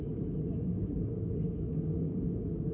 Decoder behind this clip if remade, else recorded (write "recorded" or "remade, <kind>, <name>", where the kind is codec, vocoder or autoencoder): remade, codec, DAC